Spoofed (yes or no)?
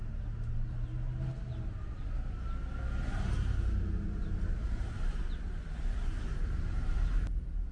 no